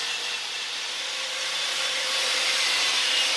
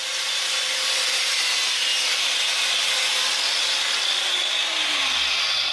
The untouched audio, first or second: second